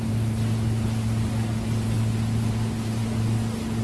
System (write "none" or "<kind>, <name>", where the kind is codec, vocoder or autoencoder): none